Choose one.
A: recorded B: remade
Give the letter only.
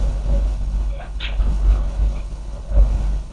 B